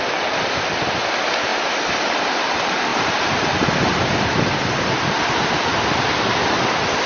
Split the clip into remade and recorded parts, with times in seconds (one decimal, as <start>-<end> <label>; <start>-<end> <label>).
0.0-1.5 recorded; 1.5-2.0 remade; 2.0-2.9 recorded; 2.9-5.7 remade; 5.7-7.1 recorded